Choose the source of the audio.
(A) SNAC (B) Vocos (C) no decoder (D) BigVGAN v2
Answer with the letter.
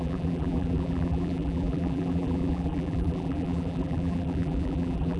D